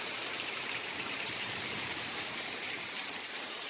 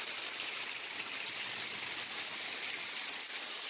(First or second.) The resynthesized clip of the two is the first